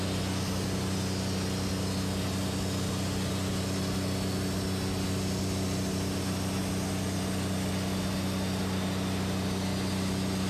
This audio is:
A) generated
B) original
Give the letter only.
B